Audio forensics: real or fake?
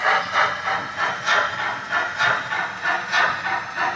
real